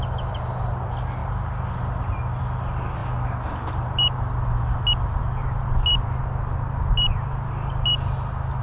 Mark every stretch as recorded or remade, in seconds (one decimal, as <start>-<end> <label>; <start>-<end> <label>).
0.0-8.6 recorded